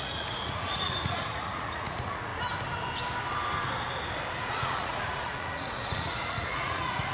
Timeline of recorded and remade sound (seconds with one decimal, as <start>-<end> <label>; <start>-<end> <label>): 0.0-2.3 remade; 2.3-4.4 recorded; 4.4-7.1 remade